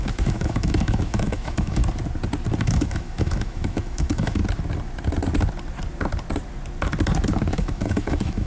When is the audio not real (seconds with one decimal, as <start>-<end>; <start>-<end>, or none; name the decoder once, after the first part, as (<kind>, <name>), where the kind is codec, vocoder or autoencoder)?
0.0-1.8 (autoencoder, DAC-VAE); 2.6-4.4; 7.5-8.5